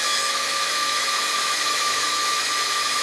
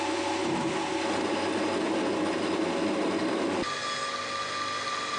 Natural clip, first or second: second